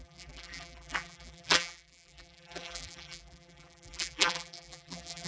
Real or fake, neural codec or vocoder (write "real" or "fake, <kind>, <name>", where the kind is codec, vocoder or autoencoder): fake, vocoder, BigVGAN v2